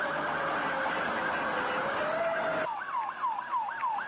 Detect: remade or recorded recorded